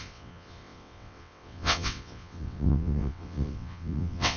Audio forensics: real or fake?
fake